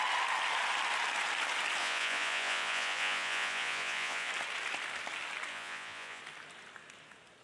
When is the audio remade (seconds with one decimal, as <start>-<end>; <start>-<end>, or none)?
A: 1.8-4.3; 5.5-6.2